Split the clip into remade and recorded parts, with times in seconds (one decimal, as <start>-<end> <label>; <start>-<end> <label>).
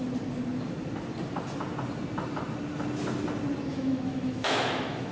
0.0-3.7 recorded; 3.7-5.1 remade